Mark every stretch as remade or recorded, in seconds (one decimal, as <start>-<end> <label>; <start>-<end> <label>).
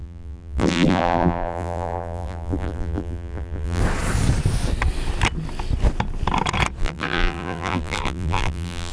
0.0-3.8 remade; 3.8-6.8 recorded; 6.8-8.9 remade